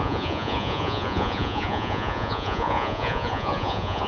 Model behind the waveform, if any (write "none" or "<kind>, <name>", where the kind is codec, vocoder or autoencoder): vocoder, Vocos